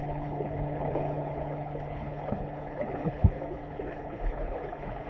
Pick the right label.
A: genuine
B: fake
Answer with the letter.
B